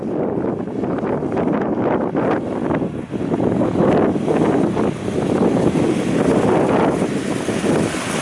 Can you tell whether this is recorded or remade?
remade